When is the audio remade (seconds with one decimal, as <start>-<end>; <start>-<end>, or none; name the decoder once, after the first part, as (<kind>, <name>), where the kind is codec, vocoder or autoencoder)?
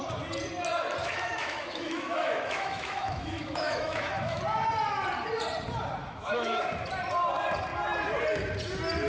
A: 1.0-4.4 (autoencoder, DAC-VAE); 6.0-6.6